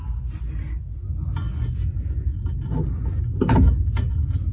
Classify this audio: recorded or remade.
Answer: recorded